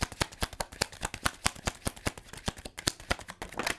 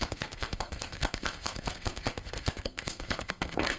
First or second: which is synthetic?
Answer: second